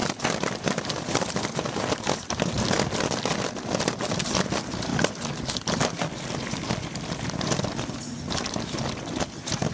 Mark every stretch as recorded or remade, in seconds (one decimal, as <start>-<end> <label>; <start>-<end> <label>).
0.0-2.5 remade; 2.5-4.9 recorded; 4.9-8.2 remade; 8.2-9.7 recorded